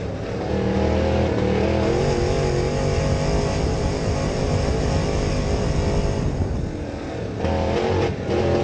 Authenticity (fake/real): real